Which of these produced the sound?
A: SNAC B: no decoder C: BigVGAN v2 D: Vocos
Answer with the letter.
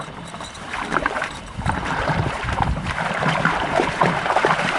C